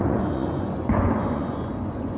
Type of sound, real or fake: fake